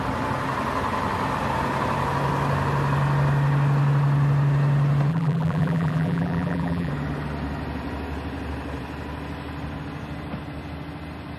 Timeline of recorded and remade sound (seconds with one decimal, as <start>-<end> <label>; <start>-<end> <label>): 0.0-5.1 recorded; 5.1-6.9 remade; 6.9-11.4 recorded